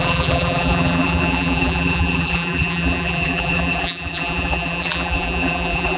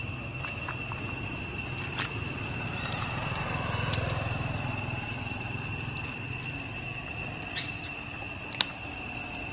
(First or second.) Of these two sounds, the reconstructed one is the first